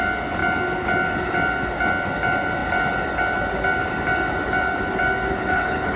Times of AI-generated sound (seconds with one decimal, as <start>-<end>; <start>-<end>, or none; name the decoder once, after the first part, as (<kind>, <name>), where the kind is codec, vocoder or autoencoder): 5.3-6.0 (codec, HILCodec)